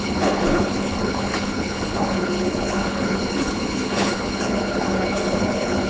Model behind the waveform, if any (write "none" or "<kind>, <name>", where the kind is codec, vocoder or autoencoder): codec, HILCodec